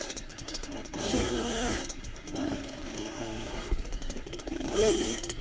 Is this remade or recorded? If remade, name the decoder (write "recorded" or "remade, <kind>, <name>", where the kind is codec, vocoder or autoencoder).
remade, codec, SNAC